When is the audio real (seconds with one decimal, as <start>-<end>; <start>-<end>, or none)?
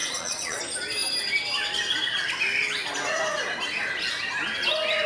0.6-5.1